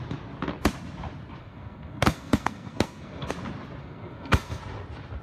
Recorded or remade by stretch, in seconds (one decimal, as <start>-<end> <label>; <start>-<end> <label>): 0.0-1.4 recorded; 1.4-3.3 remade; 3.3-3.8 recorded; 3.8-4.6 remade; 4.6-5.2 recorded